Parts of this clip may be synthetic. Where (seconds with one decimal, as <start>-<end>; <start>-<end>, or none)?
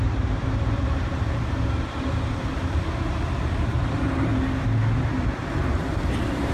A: 0.0-4.3; 5.7-6.5